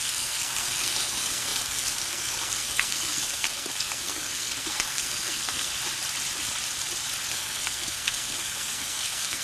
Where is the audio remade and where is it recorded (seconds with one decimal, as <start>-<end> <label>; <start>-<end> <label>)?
0.0-5.7 remade; 5.7-7.3 recorded; 7.3-9.4 remade